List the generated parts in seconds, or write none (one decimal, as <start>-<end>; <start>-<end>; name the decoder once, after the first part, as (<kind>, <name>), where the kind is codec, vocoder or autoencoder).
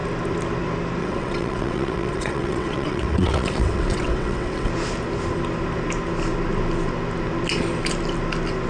1.0-4.7 (vocoder, WaveNeXt)